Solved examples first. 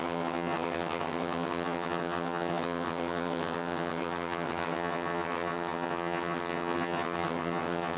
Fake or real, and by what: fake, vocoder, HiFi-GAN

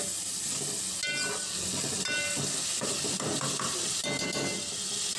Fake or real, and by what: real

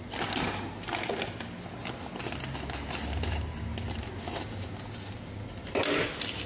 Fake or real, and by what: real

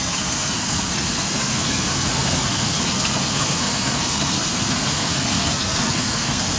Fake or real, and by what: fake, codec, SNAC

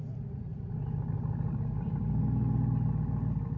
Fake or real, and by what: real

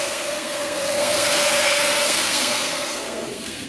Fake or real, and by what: fake, codec, SNAC